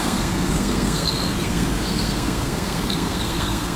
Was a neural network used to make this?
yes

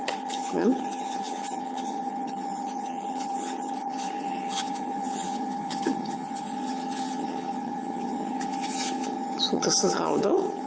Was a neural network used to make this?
yes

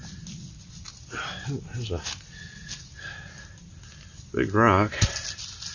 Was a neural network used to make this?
no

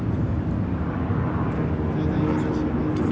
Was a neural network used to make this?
no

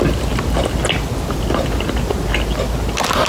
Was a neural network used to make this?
no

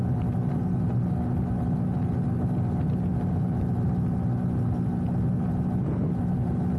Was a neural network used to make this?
no